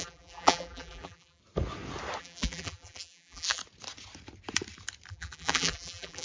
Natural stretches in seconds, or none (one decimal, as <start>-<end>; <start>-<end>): 1.4-2.2; 3.6-5.1